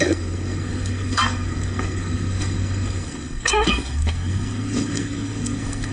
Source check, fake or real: fake